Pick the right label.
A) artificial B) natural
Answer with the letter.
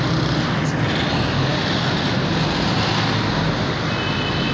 B